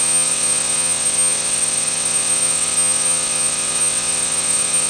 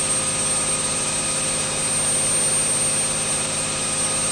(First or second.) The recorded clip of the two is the second